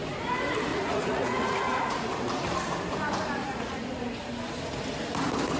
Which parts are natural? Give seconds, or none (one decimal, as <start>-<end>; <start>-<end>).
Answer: 0.0-0.7; 2.2-3.4; 4.0-5.6